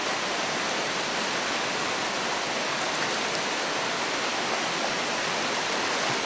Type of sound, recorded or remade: recorded